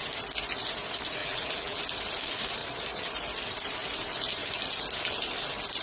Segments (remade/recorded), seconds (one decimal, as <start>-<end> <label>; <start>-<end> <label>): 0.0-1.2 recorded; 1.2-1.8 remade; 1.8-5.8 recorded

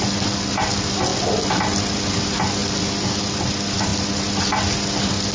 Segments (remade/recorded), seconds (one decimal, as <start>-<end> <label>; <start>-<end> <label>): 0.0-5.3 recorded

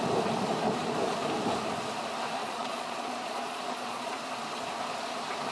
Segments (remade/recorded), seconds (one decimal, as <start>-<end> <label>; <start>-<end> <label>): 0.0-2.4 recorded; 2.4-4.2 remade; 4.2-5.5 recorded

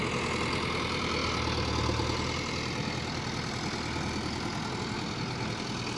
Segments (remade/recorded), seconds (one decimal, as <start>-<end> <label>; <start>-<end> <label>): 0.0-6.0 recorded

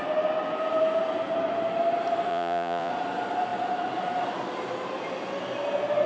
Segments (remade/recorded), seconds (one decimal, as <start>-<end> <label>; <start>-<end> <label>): 0.0-2.3 recorded; 2.3-2.9 remade; 2.9-6.1 recorded

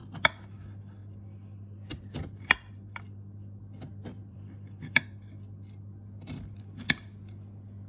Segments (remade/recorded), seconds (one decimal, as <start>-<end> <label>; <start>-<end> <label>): 0.0-1.0 recorded; 1.0-2.9 remade; 2.9-4.2 recorded; 4.2-5.0 remade; 5.0-7.9 recorded

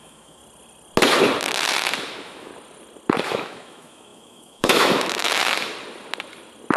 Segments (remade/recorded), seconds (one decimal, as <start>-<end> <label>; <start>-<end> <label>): 0.0-0.4 remade; 0.4-2.1 recorded; 2.1-2.5 remade; 2.5-3.3 recorded; 3.3-5.7 remade; 5.7-6.8 recorded